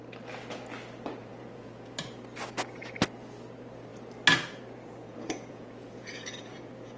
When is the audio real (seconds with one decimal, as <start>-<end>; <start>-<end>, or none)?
0.0-1.2; 2.0-5.0